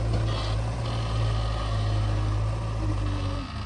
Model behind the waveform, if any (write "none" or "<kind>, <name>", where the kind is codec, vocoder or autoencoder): none